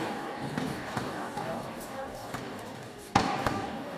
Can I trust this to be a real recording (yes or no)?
no